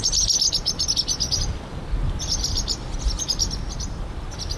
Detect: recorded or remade recorded